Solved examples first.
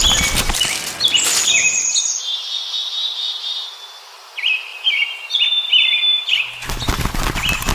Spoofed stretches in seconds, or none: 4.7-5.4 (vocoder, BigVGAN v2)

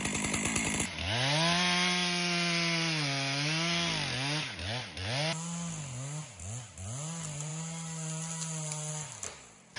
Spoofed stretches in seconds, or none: none